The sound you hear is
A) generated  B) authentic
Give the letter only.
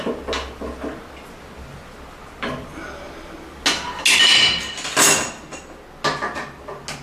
B